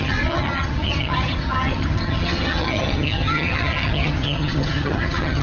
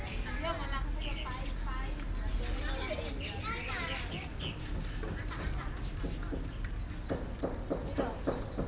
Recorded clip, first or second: second